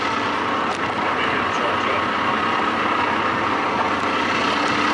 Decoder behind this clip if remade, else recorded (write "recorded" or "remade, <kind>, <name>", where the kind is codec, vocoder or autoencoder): recorded